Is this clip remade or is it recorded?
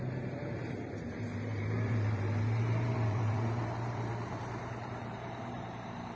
remade